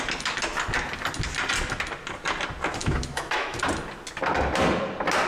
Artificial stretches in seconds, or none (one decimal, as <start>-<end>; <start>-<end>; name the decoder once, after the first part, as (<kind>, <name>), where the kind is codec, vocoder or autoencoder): 2.8-3.6 (autoencoder, DAC-VAE)